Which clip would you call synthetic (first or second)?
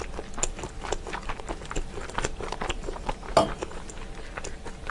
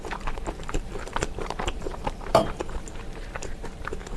second